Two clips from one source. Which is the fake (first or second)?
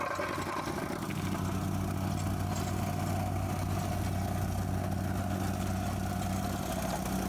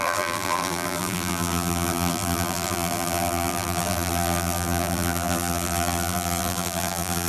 second